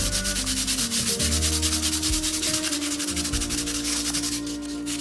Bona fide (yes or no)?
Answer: yes